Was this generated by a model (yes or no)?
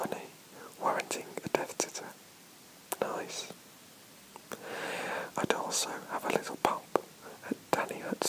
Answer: no